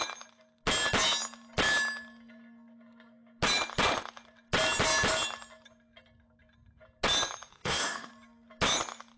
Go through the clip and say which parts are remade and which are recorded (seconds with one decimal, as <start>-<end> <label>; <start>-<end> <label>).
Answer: 0.0-7.5 recorded; 7.5-8.1 remade; 8.1-9.2 recorded